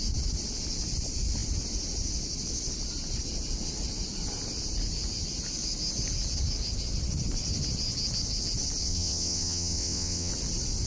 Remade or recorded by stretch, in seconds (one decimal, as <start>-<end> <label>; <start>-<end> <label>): 0.0-8.8 recorded; 8.8-10.3 remade; 10.3-10.9 recorded

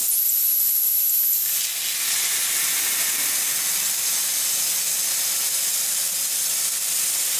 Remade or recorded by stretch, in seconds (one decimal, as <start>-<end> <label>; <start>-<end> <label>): 0.0-7.4 recorded

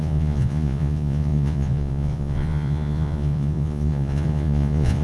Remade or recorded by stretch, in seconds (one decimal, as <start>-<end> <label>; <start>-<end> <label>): 0.0-5.0 remade

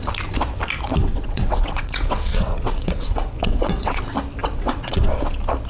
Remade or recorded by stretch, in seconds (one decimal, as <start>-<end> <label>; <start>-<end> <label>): 0.0-1.0 recorded; 1.0-4.0 remade; 4.0-4.4 recorded; 4.4-5.2 remade; 5.2-5.7 recorded

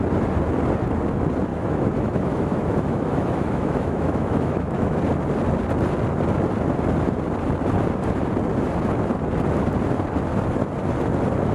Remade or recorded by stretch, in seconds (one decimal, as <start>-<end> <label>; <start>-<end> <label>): 0.0-1.5 recorded; 1.5-5.0 remade; 5.0-11.5 recorded

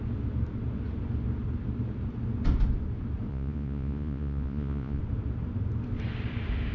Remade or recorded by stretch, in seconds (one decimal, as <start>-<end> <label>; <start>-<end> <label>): 0.0-3.3 recorded; 3.3-5.0 remade; 5.0-6.7 recorded

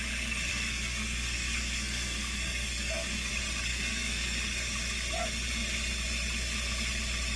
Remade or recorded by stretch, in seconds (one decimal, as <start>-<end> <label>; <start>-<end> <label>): 0.0-0.5 recorded; 0.5-3.3 remade; 3.3-3.7 recorded; 3.7-4.4 remade; 4.4-7.4 recorded